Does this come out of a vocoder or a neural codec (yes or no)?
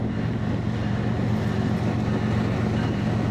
no